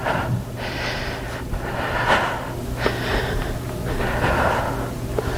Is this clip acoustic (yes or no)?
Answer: yes